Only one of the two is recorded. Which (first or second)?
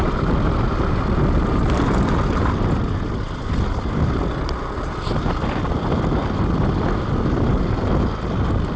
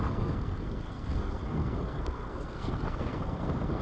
first